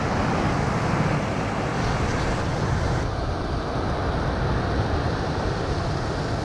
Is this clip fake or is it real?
real